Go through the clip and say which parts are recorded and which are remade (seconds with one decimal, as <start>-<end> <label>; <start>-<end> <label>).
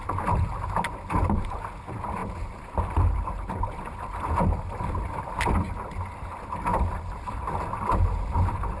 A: 0.0-2.2 recorded; 2.2-5.3 remade; 5.3-6.7 recorded; 6.7-7.6 remade; 7.6-8.8 recorded